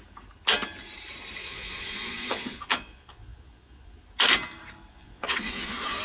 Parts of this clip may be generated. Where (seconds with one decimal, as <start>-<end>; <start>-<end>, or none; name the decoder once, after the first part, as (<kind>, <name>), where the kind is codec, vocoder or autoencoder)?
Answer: 1.4-4.0 (vocoder, Vocos); 4.9-6.0